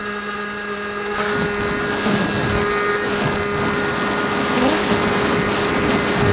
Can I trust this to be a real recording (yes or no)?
yes